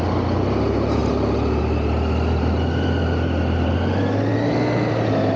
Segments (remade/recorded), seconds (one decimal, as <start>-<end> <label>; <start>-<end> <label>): 0.0-5.4 recorded